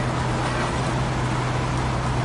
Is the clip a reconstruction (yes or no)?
no